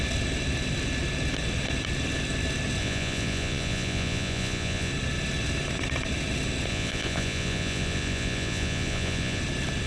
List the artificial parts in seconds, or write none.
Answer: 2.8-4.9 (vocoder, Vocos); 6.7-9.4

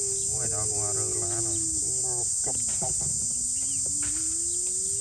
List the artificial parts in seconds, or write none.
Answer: none

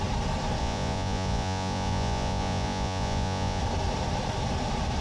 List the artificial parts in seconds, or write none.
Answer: 0.6-3.6 (vocoder, Vocos)

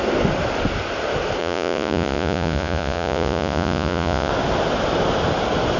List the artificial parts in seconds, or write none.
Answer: 1.4-4.3 (vocoder, Vocos)